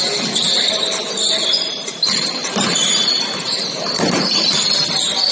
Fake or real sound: fake